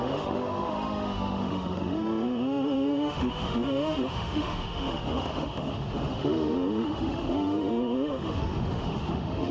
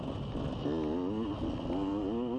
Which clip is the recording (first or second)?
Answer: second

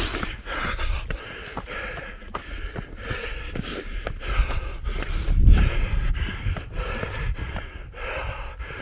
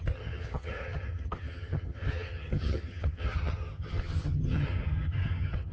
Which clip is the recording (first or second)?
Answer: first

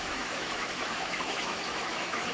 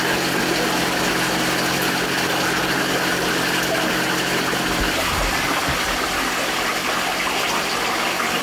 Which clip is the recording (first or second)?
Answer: second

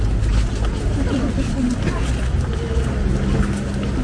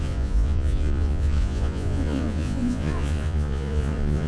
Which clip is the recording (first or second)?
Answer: first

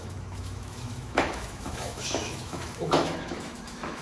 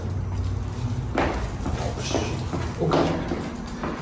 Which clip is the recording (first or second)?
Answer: second